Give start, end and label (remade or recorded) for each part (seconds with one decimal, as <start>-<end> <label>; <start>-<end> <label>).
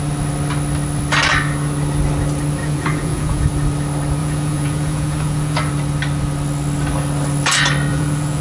0.0-2.6 recorded; 2.6-3.5 remade; 3.5-4.2 recorded; 4.2-5.7 remade; 5.7-7.9 recorded; 7.9-8.4 remade